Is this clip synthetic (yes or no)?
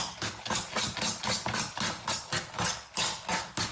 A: no